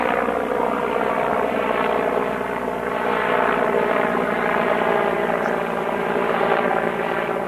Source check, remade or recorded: recorded